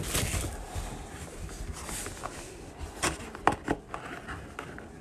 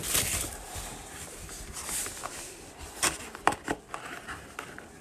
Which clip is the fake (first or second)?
second